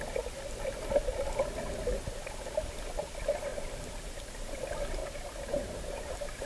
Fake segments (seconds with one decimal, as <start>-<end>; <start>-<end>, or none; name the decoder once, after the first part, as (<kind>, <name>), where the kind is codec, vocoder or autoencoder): 3.5-4.6 (vocoder, BigVGAN v2); 5.0-6.1